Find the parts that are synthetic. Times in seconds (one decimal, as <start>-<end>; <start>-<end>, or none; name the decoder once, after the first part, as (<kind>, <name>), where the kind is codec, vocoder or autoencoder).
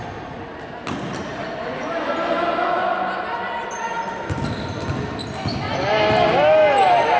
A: 1.2-1.9 (vocoder, Vocos)